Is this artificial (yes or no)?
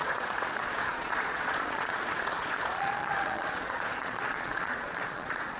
yes